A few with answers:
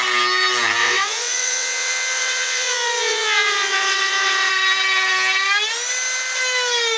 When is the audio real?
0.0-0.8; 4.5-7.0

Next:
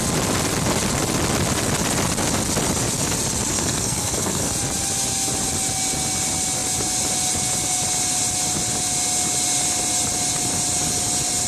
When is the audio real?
0.0-3.5; 4.5-11.5

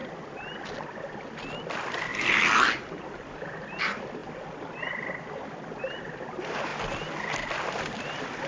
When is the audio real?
0.0-1.7